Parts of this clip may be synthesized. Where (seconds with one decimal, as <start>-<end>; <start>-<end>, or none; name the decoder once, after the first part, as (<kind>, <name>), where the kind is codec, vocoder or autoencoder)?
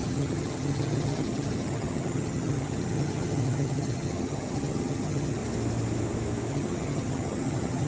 0.0-5.4 (vocoder, HiFi-GAN); 6.5-7.9